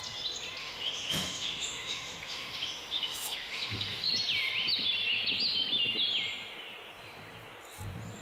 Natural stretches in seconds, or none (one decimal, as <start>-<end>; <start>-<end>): 0.0-0.6; 4.1-8.2